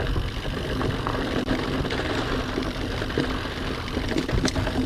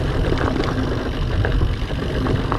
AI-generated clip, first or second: second